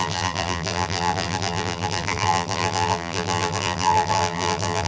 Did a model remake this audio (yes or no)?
yes